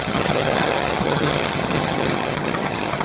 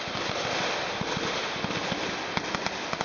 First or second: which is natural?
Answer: second